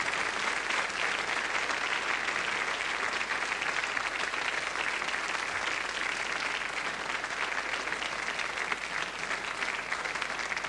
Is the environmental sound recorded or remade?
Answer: recorded